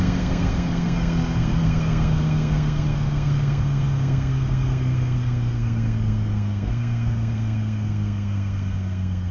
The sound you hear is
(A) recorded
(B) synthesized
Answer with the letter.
B